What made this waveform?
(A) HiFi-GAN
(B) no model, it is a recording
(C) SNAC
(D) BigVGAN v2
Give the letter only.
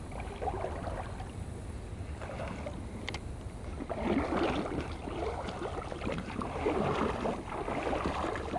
B